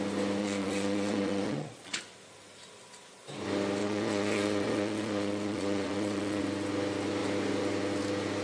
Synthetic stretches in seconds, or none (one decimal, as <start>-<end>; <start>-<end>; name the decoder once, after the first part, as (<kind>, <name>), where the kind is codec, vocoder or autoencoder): 0.4-2.0 (vocoder, Vocos); 3.8-6.4